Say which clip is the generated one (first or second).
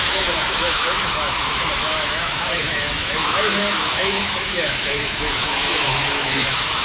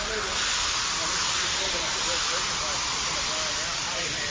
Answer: first